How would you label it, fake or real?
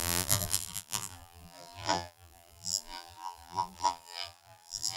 fake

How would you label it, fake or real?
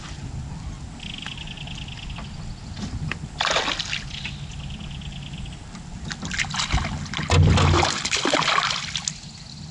real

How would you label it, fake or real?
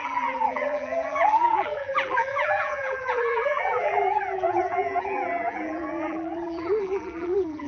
fake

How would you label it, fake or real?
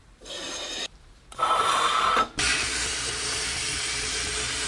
fake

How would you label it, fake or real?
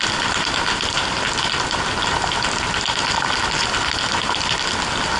fake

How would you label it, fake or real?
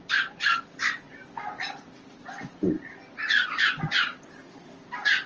real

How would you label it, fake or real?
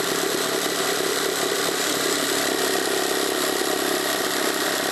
fake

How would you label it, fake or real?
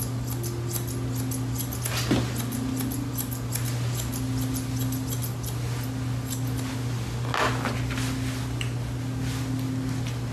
real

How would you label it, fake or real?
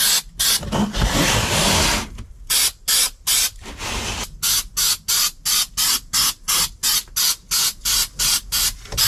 real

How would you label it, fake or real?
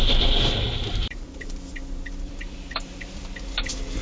fake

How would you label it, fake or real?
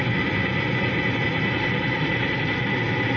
real